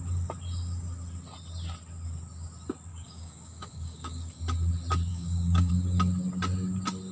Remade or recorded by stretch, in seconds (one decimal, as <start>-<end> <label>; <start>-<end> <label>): 0.0-2.9 recorded; 2.9-4.4 remade; 4.4-5.1 recorded; 5.1-5.7 remade; 5.7-7.1 recorded

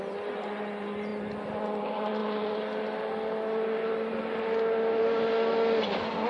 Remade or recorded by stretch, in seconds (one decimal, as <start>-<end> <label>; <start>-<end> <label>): 0.0-6.3 recorded